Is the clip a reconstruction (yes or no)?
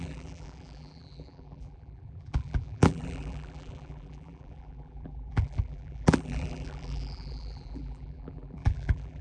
yes